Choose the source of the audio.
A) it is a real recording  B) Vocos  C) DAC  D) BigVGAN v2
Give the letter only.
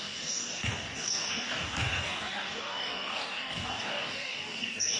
C